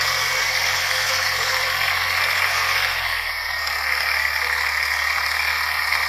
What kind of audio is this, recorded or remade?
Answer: remade